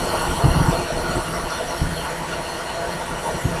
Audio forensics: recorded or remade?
recorded